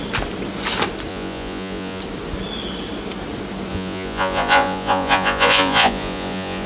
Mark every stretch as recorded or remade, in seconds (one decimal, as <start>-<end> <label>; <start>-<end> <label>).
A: 0.0-1.1 recorded; 1.1-2.0 remade; 2.0-3.7 recorded; 3.7-6.7 remade